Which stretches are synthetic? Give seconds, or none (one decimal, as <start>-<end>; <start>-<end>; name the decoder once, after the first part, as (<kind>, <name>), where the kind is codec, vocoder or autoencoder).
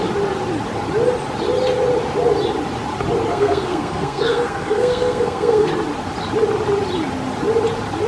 3.3-5.7 (codec, SNAC)